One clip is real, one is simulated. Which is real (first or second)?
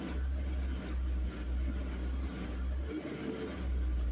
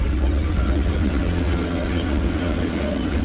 first